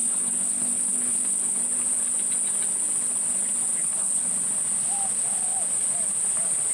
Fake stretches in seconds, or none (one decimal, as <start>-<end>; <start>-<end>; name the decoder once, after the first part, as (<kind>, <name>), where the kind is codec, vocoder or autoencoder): 0.0-1.6 (codec, HILCodec); 3.8-4.3